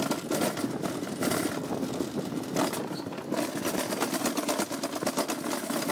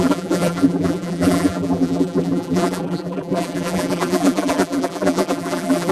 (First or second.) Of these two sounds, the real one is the first